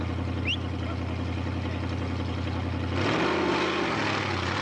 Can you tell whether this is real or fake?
real